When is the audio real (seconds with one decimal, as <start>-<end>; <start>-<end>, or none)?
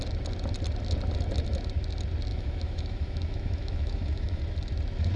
0.0-2.3; 4.4-5.2